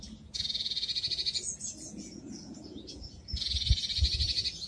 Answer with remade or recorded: remade